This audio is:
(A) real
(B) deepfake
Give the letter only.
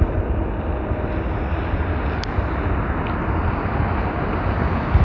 A